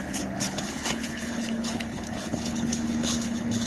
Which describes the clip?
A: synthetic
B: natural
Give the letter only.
A